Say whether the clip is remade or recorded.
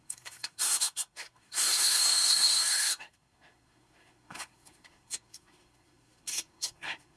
remade